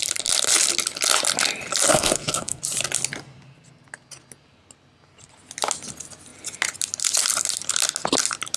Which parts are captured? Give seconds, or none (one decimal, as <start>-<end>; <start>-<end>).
0.0-1.9; 2.6-8.6